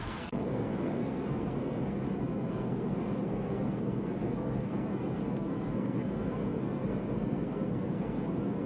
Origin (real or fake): fake